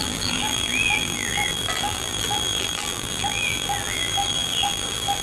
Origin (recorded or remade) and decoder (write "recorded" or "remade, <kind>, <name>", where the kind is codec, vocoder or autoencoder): remade, vocoder, BigVGAN v2